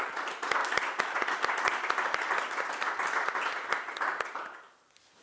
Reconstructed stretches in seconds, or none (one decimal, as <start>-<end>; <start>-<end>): none